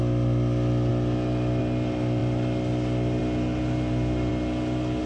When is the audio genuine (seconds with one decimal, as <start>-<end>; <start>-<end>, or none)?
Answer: 0.0-5.1